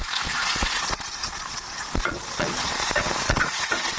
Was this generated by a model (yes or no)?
yes